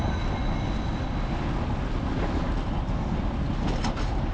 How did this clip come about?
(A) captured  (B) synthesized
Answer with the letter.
A